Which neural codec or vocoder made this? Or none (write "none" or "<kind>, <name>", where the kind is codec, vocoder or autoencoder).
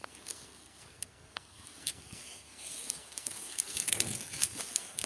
codec, SNAC